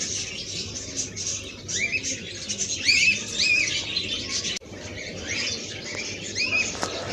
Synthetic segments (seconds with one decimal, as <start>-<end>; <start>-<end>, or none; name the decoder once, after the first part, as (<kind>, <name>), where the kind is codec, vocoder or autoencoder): none